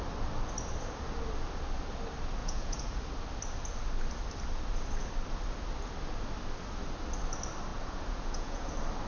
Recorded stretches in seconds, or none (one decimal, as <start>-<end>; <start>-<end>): 0.0-2.4; 3.0-7.7; 8.7-9.1